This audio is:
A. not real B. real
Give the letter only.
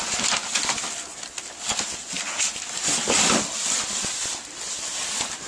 B